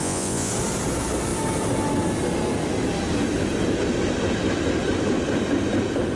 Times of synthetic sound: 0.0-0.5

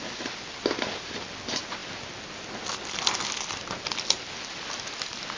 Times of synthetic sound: none

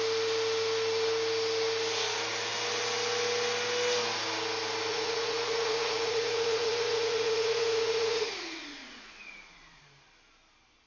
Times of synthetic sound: 4.9-9.8

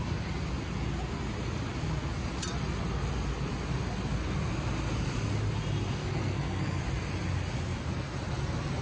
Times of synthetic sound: 6.0-6.8

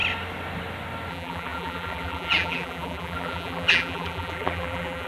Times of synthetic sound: 1.1-5.1